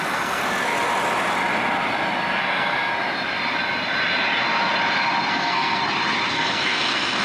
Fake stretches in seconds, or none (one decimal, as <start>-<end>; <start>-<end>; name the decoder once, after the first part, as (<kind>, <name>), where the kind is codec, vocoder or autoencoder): 0.0-0.4 (codec, SNAC); 2.4-2.9; 5.3-5.8; 6.3-7.2